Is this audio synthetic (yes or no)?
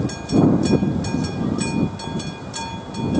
no